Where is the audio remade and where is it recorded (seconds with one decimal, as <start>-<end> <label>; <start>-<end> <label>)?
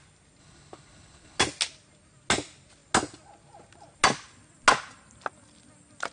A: 0.0-0.4 recorded; 0.4-1.4 remade; 1.4-6.1 recorded